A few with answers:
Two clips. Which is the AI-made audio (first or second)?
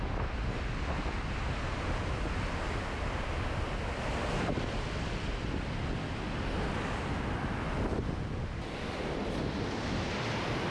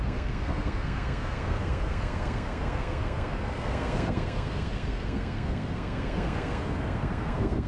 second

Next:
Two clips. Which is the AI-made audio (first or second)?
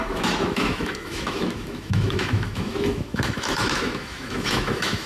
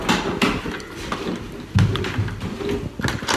first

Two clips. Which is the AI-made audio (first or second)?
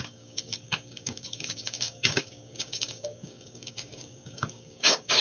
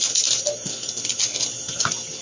first